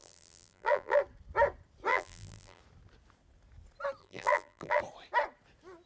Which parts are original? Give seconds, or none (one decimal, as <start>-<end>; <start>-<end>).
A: 1.0-1.9; 2.6-4.0; 4.8-5.9